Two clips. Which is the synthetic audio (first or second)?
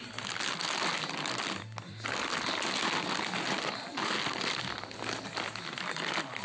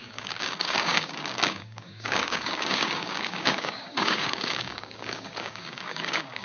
second